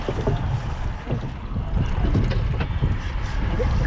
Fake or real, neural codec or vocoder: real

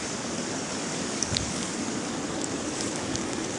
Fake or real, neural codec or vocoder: fake, codec, DAC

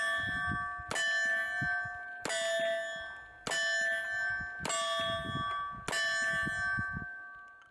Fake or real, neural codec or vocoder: real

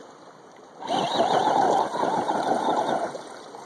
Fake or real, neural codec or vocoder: fake, vocoder, BigVGAN v2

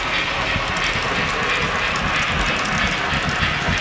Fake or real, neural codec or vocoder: real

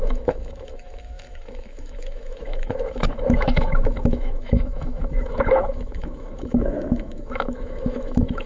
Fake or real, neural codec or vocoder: fake, autoencoder, DAC-VAE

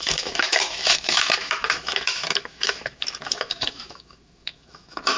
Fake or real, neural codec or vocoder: fake, autoencoder, DAC-VAE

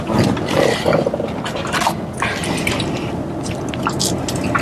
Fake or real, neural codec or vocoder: real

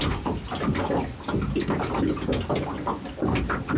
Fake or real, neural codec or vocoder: real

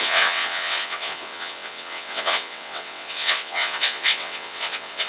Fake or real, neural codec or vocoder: fake, vocoder, WaveNeXt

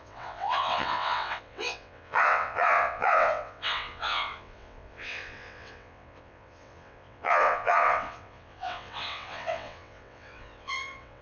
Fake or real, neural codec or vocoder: fake, vocoder, WaveNeXt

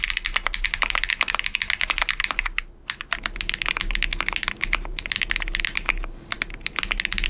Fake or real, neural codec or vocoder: real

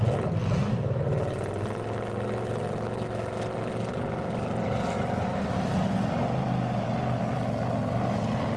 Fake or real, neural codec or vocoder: real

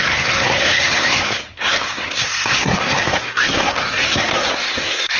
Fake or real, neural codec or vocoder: fake, codec, SNAC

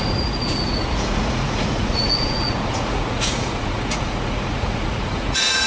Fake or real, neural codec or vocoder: fake, vocoder, Vocos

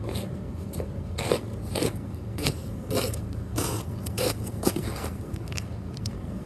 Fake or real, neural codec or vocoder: fake, codec, SNAC